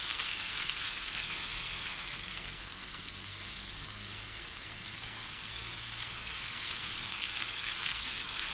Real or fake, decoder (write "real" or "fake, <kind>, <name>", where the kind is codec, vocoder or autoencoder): fake, codec, SNAC